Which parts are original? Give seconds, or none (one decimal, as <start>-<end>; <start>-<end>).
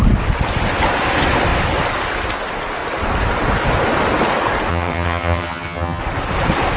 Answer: 0.0-4.7; 6.0-6.8